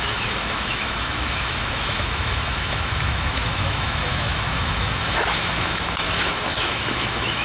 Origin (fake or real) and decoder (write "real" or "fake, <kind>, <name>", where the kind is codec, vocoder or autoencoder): fake, autoencoder, DAC-VAE